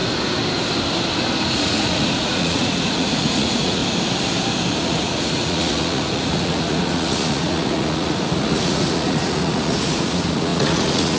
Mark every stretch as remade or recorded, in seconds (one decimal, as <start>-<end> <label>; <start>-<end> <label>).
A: 0.0-1.5 recorded; 1.5-3.8 remade; 3.8-4.8 recorded; 4.8-11.2 remade